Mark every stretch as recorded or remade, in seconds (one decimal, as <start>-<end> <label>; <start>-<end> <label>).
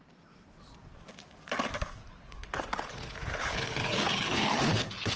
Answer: 0.0-2.0 recorded; 2.0-5.2 remade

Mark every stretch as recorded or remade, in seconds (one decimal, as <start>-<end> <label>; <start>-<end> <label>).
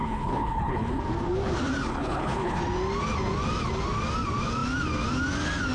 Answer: 0.0-1.0 remade; 1.0-1.9 recorded; 1.9-2.6 remade; 2.6-5.7 recorded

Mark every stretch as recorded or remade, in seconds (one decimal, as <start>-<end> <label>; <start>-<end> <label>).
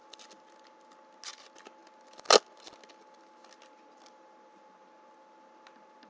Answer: 0.0-6.1 recorded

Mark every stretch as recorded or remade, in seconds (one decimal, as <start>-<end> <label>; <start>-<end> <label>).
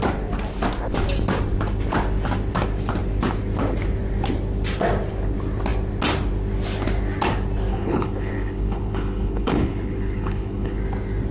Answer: 0.0-7.7 recorded; 7.7-10.8 remade; 10.8-11.3 recorded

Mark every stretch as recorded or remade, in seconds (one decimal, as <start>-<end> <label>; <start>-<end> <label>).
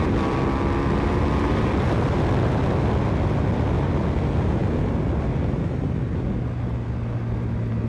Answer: 0.0-7.9 recorded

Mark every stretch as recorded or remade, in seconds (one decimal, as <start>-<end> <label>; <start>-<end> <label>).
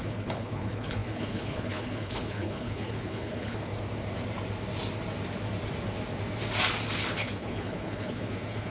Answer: 0.0-3.7 remade; 3.7-7.1 recorded; 7.1-8.7 remade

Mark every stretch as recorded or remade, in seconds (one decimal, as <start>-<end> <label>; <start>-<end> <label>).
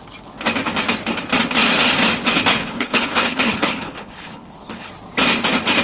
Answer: 0.0-2.5 recorded; 2.5-4.9 remade; 4.9-5.8 recorded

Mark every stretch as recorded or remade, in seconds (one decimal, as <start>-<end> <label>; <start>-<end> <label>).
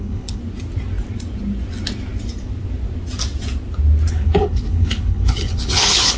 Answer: 0.0-0.4 remade; 0.4-4.1 recorded; 4.1-6.2 remade